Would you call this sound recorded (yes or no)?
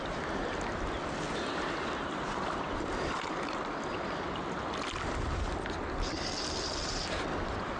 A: yes